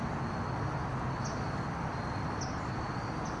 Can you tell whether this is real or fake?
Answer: real